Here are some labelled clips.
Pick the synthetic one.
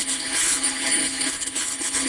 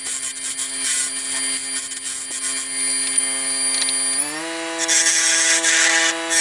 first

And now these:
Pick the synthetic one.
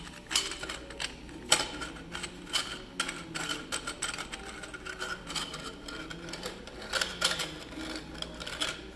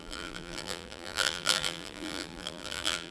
second